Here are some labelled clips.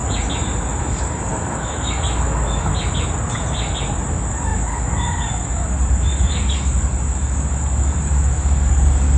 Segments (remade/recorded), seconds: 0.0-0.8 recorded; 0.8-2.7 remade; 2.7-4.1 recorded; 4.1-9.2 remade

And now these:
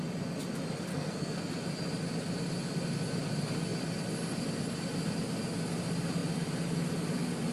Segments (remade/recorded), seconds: 0.0-0.9 recorded; 0.9-1.4 remade; 1.4-7.5 recorded

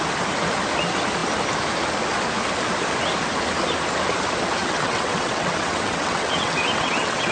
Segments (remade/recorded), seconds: 0.0-4.6 recorded; 4.6-7.3 remade

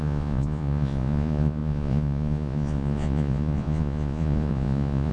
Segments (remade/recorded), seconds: 0.0-5.1 remade

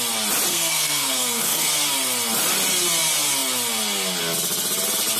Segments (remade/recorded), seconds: 0.0-0.5 recorded; 0.5-1.7 remade; 1.7-5.2 recorded

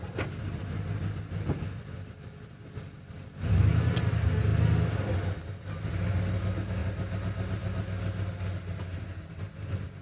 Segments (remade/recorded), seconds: 0.0-10.0 recorded

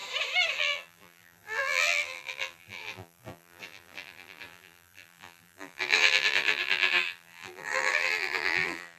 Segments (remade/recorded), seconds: 0.0-0.6 recorded; 0.6-9.0 remade